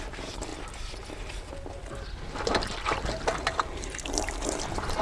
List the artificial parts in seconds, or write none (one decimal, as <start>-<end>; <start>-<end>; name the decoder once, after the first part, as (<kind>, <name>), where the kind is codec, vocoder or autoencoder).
0.0-0.5 (vocoder, BigVGAN v2); 3.5-5.0